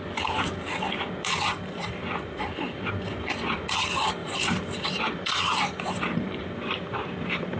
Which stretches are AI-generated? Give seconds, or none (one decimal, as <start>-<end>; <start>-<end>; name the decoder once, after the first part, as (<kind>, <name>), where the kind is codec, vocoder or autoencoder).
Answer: 1.5-2.8 (vocoder, BigVGAN v2); 4.2-7.6